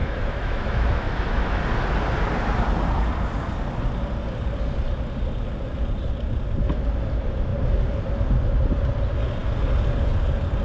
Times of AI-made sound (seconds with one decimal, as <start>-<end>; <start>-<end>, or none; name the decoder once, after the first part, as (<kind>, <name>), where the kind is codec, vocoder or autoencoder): 0.0-1.6 (autoencoder, DAC-VAE)